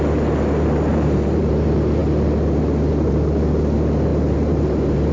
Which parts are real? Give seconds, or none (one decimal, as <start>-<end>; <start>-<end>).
0.0-0.9; 1.5-4.1